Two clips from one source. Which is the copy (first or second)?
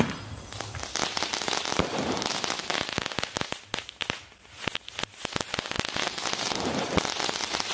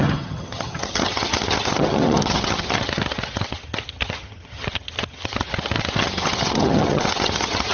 second